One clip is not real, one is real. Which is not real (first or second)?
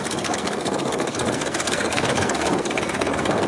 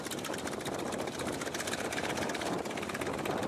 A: first